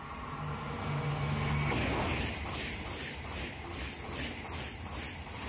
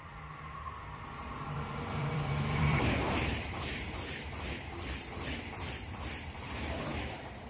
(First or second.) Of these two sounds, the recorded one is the first